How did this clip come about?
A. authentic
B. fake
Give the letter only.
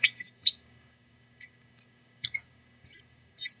B